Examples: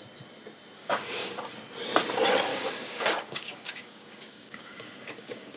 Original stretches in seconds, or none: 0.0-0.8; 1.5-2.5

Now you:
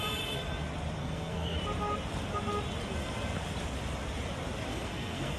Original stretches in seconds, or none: 0.0-1.0; 1.6-4.7

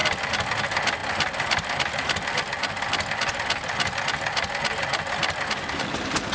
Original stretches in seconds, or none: 0.0-6.3

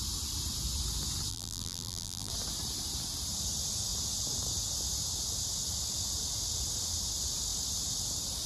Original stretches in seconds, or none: 0.0-1.3; 2.3-8.5

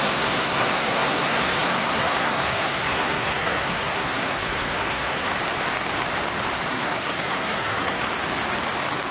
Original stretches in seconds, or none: 5.3-6.7; 8.0-9.1

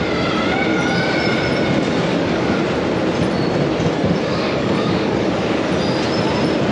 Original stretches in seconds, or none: 0.0-2.1; 2.6-4.3; 5.7-6.7

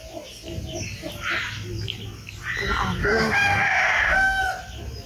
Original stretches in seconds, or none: 0.0-3.0; 4.4-5.1

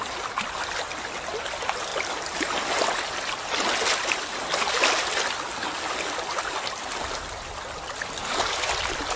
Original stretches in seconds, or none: 0.0-8.2; 8.7-9.2